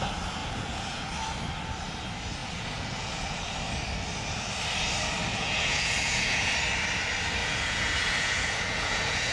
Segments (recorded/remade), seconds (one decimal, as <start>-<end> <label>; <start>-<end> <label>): 0.0-0.4 recorded; 0.4-1.1 remade; 1.1-2.4 recorded; 2.4-3.4 remade; 3.4-5.3 recorded; 5.3-6.5 remade; 6.5-7.4 recorded; 7.4-9.3 remade